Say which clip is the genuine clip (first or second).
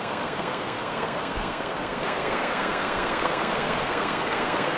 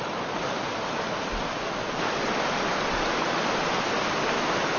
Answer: second